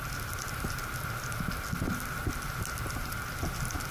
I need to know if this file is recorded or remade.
recorded